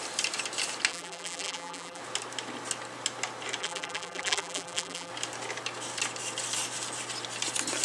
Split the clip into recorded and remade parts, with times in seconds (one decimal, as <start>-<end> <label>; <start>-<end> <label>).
0.0-0.9 recorded; 0.9-2.0 remade; 2.0-3.6 recorded; 3.6-5.1 remade; 5.1-7.8 recorded

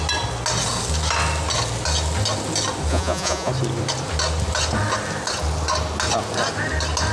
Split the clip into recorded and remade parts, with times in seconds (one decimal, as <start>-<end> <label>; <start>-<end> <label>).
0.0-2.9 recorded; 2.9-3.5 remade; 3.5-7.1 recorded